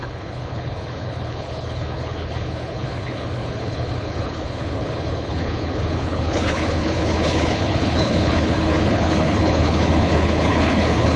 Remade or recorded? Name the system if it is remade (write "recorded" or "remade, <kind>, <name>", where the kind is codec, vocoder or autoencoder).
remade, codec, HILCodec